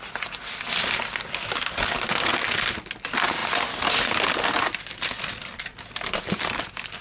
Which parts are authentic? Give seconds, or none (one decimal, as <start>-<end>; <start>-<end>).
0.0-7.0